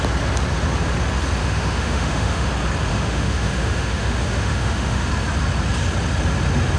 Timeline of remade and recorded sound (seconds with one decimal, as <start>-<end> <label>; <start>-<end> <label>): 0.0-1.4 recorded; 1.4-2.5 remade; 2.5-2.9 recorded; 2.9-5.1 remade; 5.1-6.8 recorded